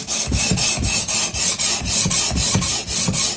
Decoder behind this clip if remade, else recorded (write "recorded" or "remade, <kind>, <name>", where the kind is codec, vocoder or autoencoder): recorded